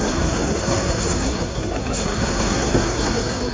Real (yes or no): no